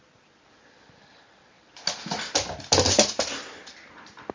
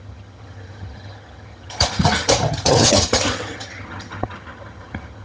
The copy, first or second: second